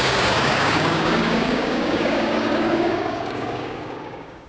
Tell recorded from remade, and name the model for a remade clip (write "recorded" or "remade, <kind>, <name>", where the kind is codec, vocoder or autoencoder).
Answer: remade, codec, DAC